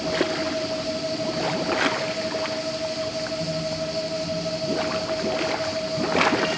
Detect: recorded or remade recorded